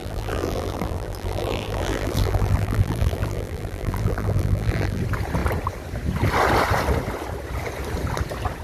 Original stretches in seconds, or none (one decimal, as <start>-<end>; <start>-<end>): 5.0-8.6